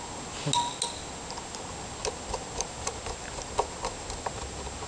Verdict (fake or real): real